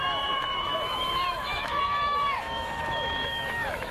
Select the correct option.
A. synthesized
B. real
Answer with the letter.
A